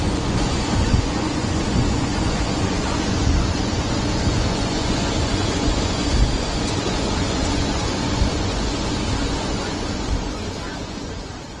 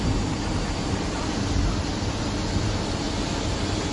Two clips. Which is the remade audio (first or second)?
first